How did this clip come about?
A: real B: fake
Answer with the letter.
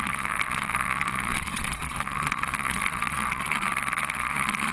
B